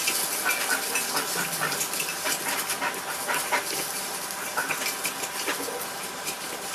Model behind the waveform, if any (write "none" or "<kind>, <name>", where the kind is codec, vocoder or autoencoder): none